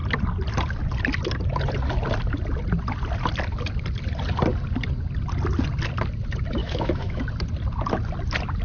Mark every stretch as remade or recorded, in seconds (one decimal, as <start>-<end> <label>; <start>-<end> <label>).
0.0-6.6 recorded; 6.6-7.2 remade; 7.2-8.6 recorded